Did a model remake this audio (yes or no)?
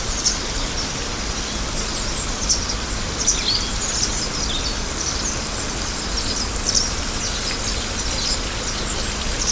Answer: no